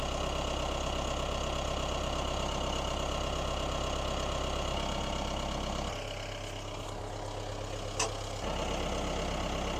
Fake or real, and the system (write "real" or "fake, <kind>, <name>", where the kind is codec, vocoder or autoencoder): real